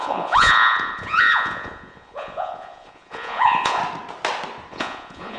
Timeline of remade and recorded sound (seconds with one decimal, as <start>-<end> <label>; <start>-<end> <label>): 0.0-3.8 remade; 3.8-4.7 recorded; 4.7-5.4 remade